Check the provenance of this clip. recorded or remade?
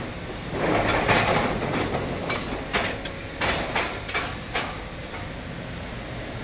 recorded